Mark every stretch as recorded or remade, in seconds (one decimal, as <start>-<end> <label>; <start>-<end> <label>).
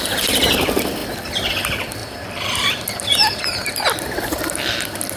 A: 0.0-5.2 remade